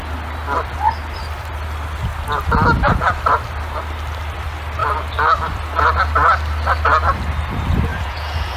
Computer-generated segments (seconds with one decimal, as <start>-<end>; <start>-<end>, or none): 7.9-8.6